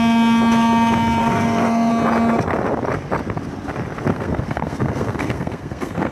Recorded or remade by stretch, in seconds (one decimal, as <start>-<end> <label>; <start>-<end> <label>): 0.0-1.2 recorded; 1.2-1.9 remade; 1.9-4.1 recorded; 4.1-6.1 remade